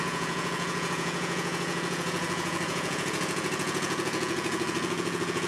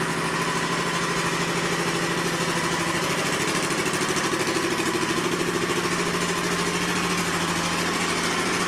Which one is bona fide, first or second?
second